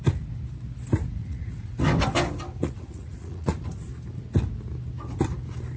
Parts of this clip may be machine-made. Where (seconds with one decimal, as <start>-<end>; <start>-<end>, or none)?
1.2-1.8; 2.6-3.5